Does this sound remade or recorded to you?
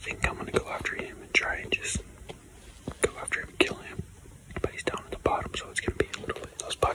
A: recorded